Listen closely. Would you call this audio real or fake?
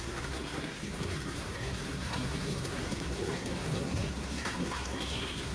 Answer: fake